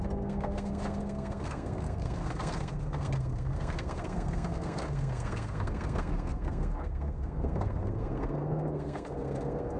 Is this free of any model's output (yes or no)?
no